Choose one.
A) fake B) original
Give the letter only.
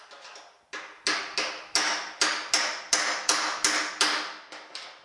B